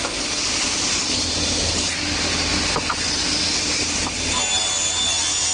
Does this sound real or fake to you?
real